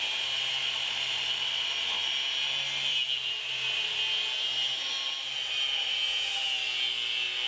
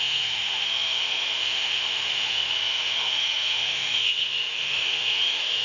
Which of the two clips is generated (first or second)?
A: second